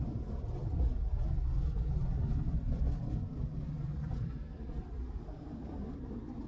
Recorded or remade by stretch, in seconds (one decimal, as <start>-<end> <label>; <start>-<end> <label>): 0.0-0.6 remade; 0.6-3.7 recorded; 3.7-6.5 remade